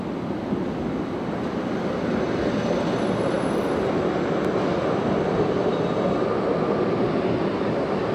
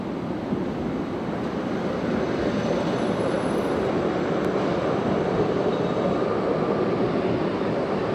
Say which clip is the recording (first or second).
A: first